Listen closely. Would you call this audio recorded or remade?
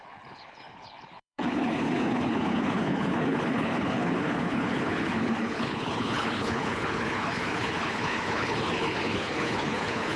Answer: remade